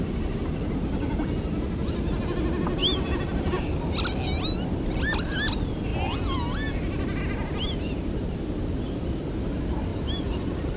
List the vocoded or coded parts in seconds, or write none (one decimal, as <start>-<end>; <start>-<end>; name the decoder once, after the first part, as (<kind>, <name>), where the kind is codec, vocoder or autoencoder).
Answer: none